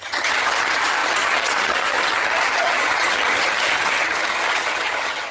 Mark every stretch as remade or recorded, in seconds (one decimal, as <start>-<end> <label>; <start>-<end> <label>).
0.0-5.3 remade